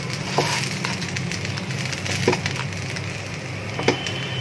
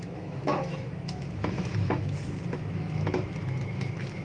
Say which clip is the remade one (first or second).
second